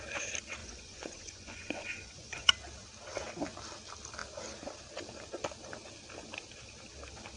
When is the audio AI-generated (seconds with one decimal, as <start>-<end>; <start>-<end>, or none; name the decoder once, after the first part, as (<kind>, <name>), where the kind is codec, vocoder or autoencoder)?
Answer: 0.6-2.5 (vocoder, Vocos)